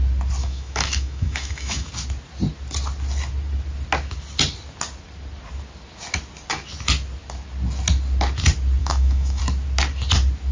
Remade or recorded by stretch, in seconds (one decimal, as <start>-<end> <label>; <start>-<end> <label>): 0.0-0.4 recorded; 0.4-1.9 remade; 1.9-8.8 recorded; 8.8-9.4 remade; 9.4-10.5 recorded